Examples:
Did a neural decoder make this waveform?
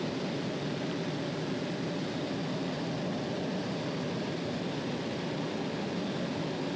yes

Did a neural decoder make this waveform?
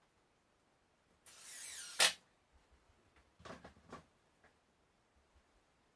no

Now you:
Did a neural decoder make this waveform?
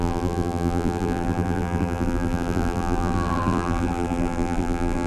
yes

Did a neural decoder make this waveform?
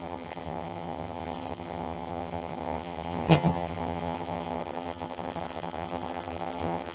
yes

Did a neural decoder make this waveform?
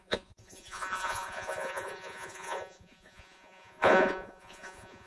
yes